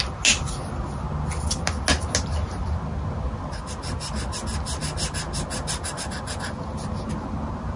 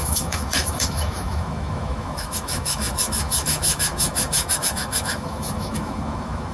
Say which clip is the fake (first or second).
second